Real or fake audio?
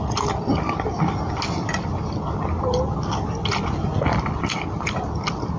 real